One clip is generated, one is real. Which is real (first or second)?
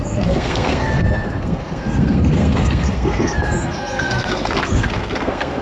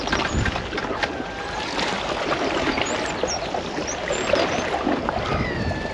second